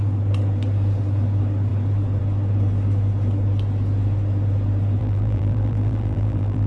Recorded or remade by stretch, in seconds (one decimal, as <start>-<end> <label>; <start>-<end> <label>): 0.0-5.0 recorded; 5.0-6.7 remade